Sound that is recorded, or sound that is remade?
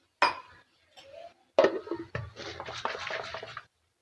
recorded